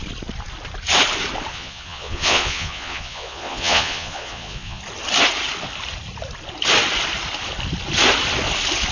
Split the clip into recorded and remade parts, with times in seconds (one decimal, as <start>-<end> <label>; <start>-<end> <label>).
0.0-1.5 recorded; 1.5-4.8 remade; 4.8-8.9 recorded